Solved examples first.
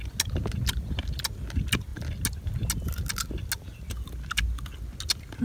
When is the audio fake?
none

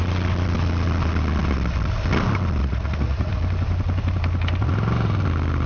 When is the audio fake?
2.6-3.3 (vocoder, Vocos)